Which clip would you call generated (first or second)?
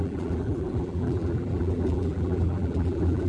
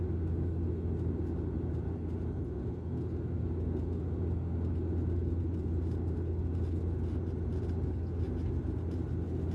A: first